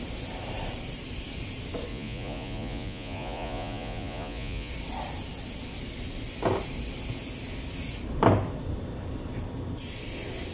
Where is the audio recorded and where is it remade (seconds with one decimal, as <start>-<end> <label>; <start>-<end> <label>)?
0.0-1.9 recorded; 1.9-4.7 remade; 4.7-10.5 recorded